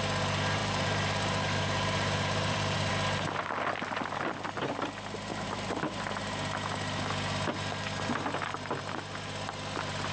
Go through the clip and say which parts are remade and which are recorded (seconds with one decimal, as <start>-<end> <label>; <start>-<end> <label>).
0.0-0.6 recorded; 0.6-2.9 remade; 2.9-5.3 recorded; 5.3-6.0 remade; 6.0-10.1 recorded